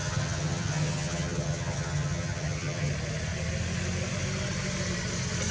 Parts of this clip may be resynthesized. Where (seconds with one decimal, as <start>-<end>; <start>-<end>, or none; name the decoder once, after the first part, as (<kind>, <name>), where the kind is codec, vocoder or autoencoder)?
0.0-2.9 (vocoder, HiFi-GAN)